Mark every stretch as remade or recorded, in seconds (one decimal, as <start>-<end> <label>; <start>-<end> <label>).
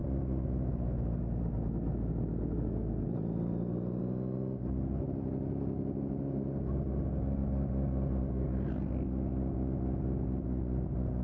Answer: 0.0-11.2 recorded